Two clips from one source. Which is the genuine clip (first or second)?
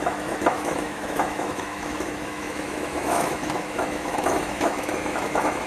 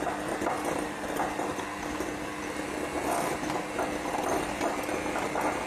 second